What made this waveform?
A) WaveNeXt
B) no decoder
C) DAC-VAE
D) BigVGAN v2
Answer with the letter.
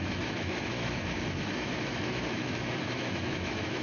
C